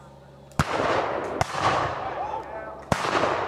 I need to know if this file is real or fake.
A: real